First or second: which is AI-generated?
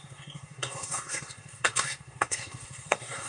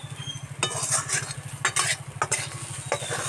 first